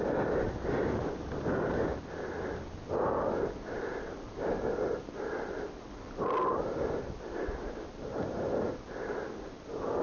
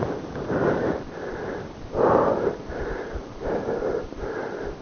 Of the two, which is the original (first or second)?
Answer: first